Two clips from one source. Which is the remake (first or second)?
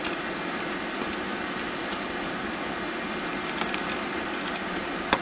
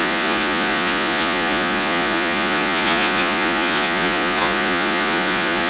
second